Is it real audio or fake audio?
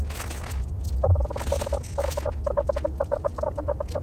real